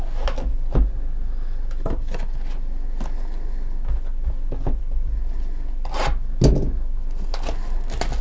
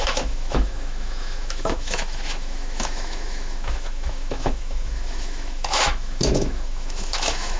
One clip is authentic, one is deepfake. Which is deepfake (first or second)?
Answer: second